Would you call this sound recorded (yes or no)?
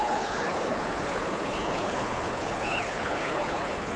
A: no